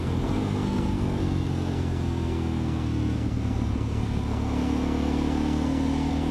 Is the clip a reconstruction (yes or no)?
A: yes